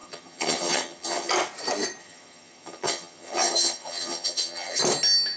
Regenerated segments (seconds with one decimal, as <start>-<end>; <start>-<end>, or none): 0.0-1.3; 2.0-4.8